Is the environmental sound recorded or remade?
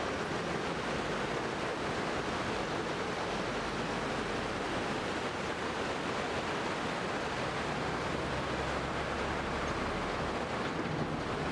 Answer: recorded